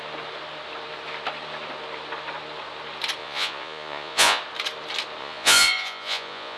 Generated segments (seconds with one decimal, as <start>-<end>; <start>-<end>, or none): 3.2-4.4; 5.2-6.6